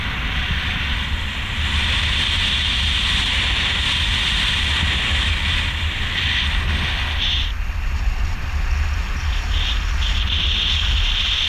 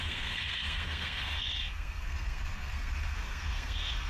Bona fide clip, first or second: first